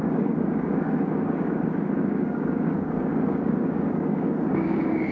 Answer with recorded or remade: remade